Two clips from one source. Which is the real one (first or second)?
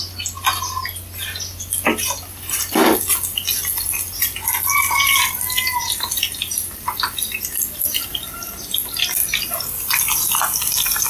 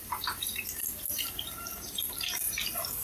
first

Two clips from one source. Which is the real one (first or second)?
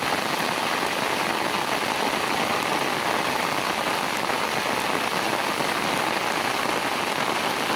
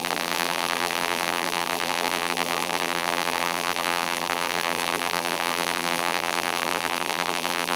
first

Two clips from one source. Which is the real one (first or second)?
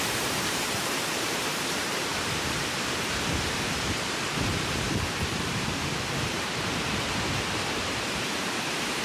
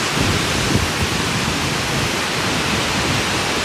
second